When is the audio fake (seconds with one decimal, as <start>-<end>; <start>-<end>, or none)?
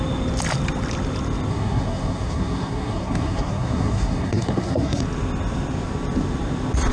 1.5-5.0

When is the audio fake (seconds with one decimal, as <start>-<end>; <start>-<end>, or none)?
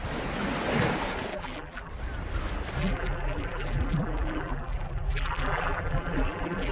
1.3-1.9; 2.8-6.7